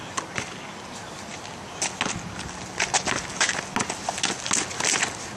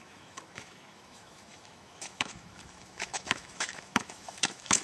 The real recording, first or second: first